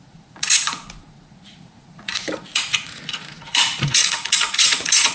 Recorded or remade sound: remade